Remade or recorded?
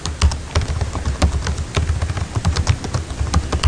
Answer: recorded